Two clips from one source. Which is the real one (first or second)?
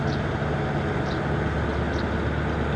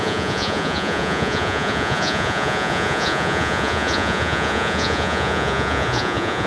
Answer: first